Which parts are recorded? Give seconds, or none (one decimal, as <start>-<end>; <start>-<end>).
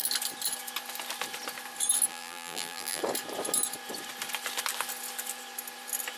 0.0-2.1; 3.0-6.2